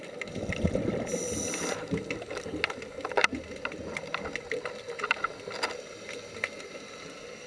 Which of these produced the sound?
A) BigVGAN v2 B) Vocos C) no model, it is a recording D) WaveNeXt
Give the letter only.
C